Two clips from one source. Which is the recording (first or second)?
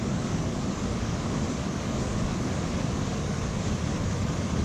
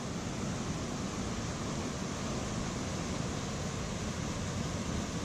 second